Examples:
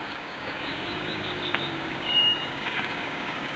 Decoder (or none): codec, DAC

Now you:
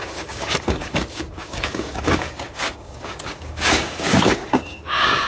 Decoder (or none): codec, DAC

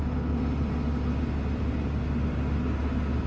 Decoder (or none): none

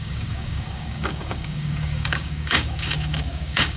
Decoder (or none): codec, DAC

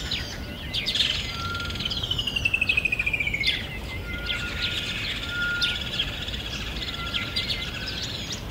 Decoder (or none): none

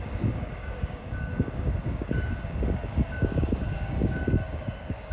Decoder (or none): codec, DAC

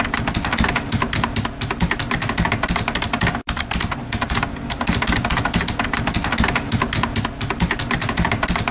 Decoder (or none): none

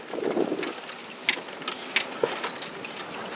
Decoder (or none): none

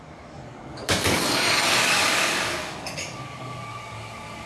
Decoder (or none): codec, DAC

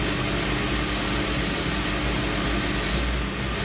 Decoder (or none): none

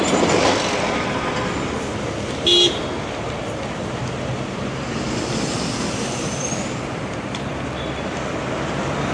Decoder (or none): none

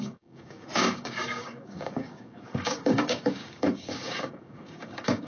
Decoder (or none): codec, DAC